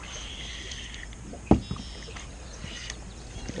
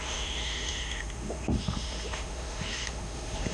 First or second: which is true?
first